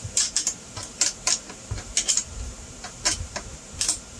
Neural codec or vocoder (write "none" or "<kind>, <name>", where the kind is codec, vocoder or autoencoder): vocoder, BigVGAN v2